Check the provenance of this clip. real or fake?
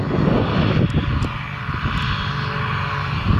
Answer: real